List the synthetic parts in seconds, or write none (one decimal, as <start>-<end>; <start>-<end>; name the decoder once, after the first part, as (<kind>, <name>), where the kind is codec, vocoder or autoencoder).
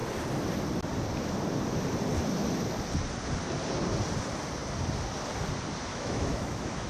5.9-6.9 (autoencoder, DAC-VAE)